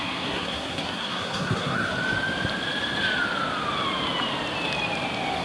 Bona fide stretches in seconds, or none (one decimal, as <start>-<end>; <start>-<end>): 1.9-5.4

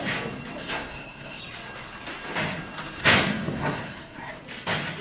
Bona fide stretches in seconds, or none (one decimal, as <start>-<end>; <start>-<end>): 0.0-0.6; 1.4-3.0; 4.3-5.0

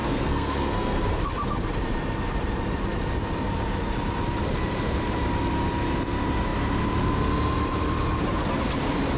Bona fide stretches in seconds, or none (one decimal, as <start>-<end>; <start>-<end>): 1.2-9.2

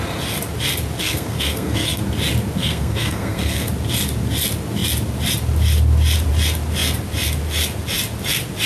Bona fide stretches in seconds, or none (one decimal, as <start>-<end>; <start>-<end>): 0.0-1.0; 2.0-2.6; 3.7-8.7

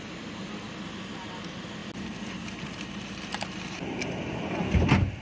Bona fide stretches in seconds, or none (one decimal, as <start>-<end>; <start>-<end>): 0.0-5.2

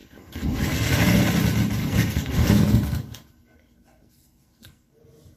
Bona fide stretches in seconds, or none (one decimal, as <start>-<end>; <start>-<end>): 1.2-1.8; 5.0-5.4